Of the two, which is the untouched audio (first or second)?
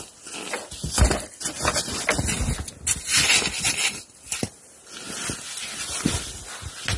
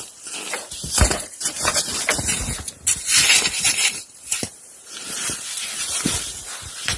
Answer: first